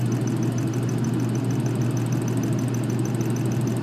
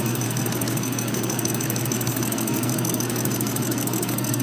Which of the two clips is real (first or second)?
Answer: first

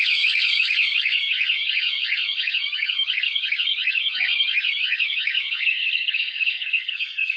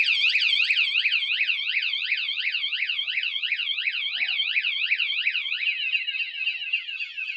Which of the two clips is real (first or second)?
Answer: second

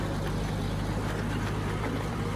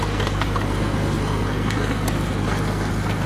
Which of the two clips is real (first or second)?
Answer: first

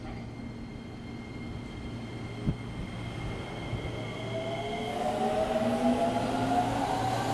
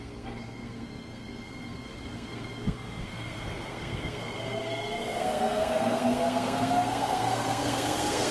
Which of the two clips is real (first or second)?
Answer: first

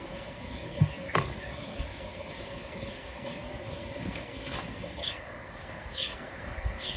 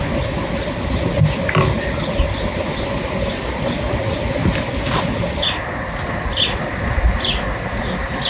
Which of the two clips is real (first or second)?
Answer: second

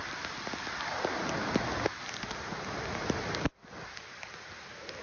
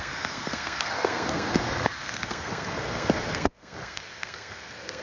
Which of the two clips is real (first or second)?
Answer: first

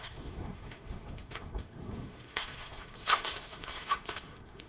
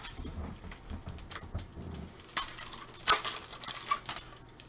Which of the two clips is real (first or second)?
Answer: second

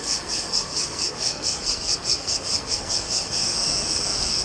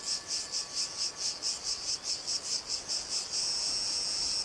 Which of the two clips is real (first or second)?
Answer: second